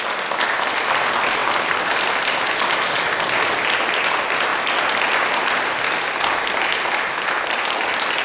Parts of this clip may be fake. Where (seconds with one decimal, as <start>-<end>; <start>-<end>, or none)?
1.4-2.4; 4.5-7.0